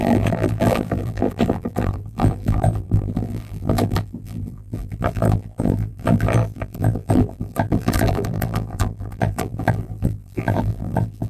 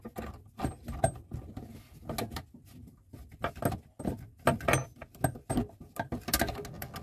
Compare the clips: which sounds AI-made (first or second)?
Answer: first